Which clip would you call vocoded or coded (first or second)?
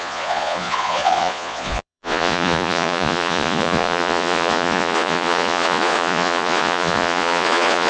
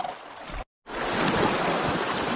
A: first